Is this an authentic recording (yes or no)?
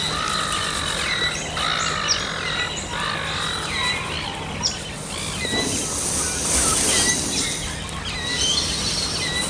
yes